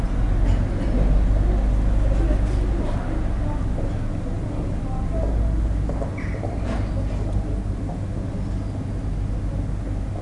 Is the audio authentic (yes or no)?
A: yes